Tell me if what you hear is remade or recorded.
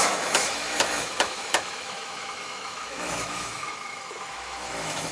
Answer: remade